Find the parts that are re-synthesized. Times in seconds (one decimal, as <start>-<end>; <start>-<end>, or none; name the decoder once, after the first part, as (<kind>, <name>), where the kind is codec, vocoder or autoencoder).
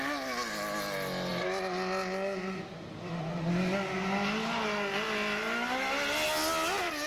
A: none